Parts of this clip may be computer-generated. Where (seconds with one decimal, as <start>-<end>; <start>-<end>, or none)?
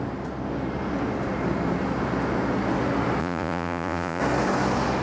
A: 3.2-4.2